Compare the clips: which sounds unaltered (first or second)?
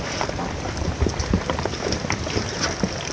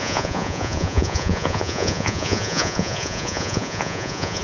first